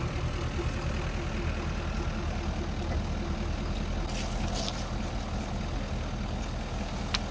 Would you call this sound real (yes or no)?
yes